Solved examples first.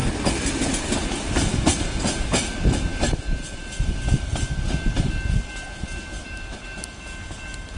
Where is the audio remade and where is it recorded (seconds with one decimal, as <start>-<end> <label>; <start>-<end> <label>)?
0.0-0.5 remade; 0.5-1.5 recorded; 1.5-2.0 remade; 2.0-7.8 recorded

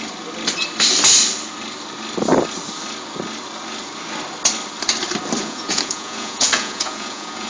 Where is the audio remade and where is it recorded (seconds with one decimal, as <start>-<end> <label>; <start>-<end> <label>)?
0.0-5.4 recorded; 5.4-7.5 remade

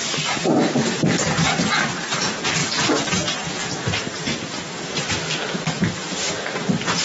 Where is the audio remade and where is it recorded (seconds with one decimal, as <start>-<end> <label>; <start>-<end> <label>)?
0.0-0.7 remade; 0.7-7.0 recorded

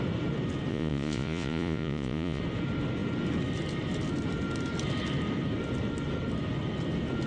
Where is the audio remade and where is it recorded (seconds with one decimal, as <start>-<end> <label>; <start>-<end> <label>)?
0.0-0.7 recorded; 0.7-2.4 remade; 2.4-7.3 recorded